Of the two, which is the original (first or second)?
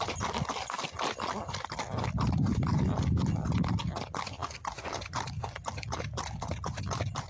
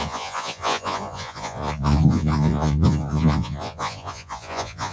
first